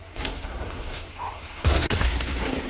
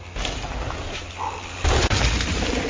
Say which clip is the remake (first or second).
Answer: first